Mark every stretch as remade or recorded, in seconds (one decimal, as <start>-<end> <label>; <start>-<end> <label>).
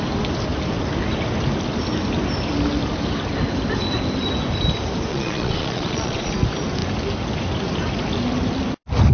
0.0-5.1 recorded; 5.1-6.3 remade; 6.3-9.1 recorded